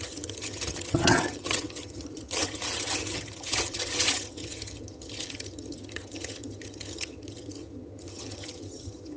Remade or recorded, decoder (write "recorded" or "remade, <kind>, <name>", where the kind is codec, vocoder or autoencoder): remade, vocoder, HiFi-GAN